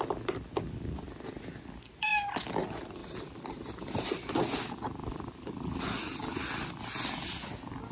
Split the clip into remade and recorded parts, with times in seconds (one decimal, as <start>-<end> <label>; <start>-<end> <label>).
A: 0.0-3.0 recorded; 3.0-4.1 remade; 4.1-5.0 recorded; 5.0-5.8 remade; 5.8-7.9 recorded